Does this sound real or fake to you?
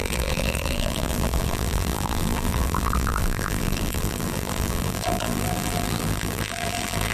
fake